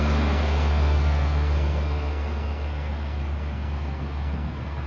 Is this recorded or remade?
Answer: remade